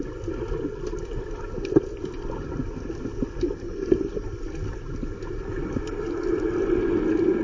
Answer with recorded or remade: recorded